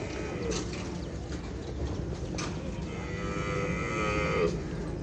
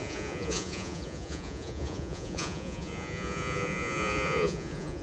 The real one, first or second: first